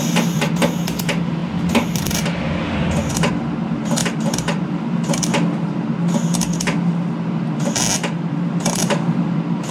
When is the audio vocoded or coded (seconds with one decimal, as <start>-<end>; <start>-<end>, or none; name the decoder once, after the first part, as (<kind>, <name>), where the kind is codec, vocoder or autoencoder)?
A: none